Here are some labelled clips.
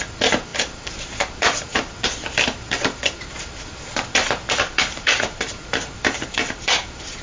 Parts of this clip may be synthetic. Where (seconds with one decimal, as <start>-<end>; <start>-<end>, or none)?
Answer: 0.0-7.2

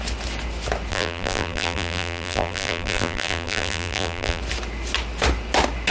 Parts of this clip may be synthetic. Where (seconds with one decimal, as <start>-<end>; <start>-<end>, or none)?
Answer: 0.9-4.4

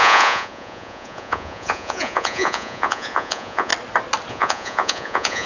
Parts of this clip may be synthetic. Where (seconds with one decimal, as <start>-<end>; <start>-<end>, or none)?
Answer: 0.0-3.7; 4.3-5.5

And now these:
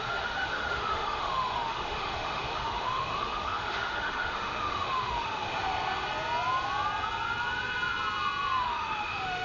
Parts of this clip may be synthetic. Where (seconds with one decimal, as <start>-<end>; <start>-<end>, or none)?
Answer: 0.0-5.7; 8.6-9.4

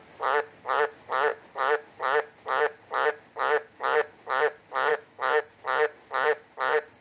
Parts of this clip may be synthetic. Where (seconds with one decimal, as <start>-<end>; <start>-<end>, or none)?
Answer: 4.9-5.4

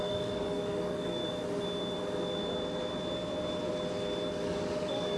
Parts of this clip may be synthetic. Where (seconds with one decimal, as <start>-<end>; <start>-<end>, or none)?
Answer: 0.0-1.2; 4.3-5.2